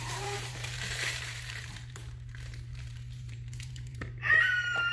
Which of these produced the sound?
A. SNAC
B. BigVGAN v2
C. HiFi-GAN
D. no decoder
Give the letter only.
B